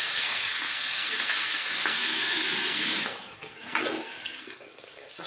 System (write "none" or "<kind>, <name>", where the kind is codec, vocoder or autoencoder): codec, SNAC